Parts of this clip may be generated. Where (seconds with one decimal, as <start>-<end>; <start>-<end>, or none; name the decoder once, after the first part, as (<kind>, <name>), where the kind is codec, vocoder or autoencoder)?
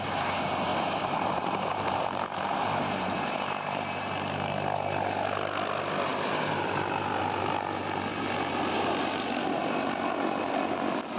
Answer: 0.7-3.8 (vocoder, BigVGAN v2)